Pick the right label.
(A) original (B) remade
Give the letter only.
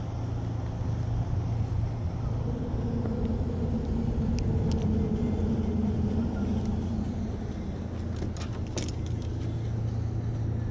A